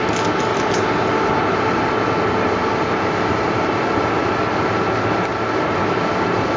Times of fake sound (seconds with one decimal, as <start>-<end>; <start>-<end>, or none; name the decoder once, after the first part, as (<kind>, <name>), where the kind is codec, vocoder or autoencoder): 0.5-2.0 (vocoder, BigVGAN v2); 2.6-4.2; 5.3-6.6